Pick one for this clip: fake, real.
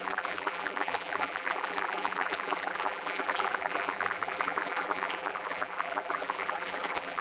fake